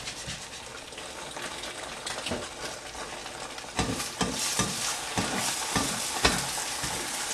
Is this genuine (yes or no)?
yes